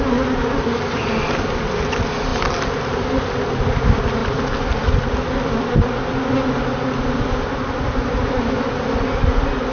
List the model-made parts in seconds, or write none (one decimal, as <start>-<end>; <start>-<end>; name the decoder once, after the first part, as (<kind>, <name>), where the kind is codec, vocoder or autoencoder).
none